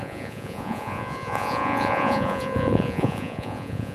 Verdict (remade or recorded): remade